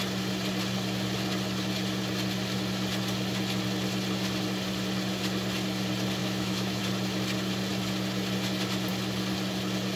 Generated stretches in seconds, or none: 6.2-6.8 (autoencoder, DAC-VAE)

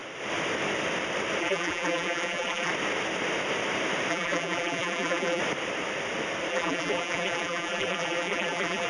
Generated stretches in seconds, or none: 1.4-2.7 (vocoder, BigVGAN v2); 4.1-5.4; 6.5-8.9